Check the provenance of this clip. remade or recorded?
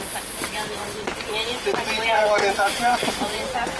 remade